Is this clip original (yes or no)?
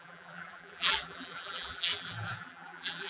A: no